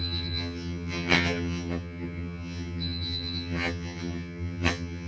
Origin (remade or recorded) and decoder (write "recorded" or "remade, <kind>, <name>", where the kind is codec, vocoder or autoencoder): remade, vocoder, HiFi-GAN